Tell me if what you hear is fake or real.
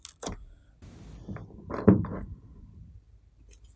real